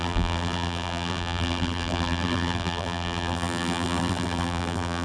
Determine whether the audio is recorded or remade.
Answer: remade